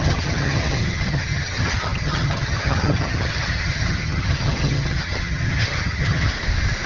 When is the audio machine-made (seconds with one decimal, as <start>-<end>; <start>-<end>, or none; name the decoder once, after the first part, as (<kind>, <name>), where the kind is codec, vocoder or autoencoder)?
0.0-6.3 (vocoder, HiFi-GAN)